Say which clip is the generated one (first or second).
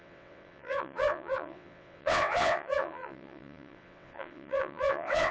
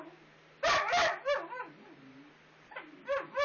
first